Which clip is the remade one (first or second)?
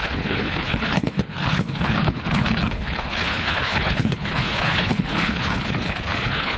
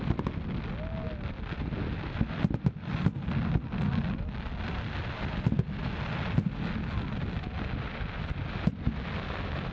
first